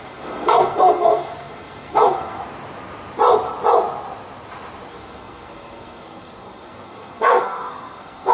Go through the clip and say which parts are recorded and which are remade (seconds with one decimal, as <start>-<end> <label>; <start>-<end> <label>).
0.0-2.4 remade; 2.4-4.9 recorded; 4.9-8.3 remade